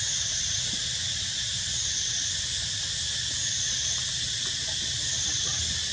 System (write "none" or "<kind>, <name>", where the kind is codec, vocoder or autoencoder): none